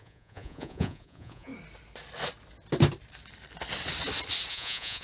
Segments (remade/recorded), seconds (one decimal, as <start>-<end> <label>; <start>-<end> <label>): 0.0-1.5 remade; 1.5-4.5 recorded; 4.5-5.0 remade